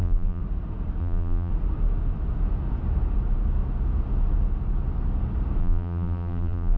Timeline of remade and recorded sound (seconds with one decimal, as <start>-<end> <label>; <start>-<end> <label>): 0.0-0.4 remade; 0.4-1.0 recorded; 1.0-1.5 remade; 1.5-5.6 recorded; 5.6-6.8 remade